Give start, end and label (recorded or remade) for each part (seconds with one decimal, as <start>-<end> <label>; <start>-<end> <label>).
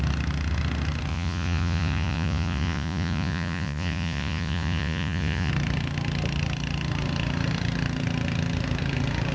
0.0-1.1 recorded; 1.1-5.5 remade; 5.5-9.3 recorded